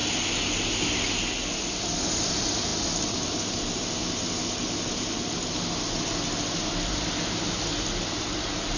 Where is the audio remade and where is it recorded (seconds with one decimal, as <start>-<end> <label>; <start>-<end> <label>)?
0.0-8.8 recorded